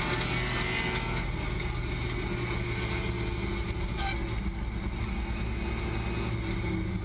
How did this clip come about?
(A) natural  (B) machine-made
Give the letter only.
A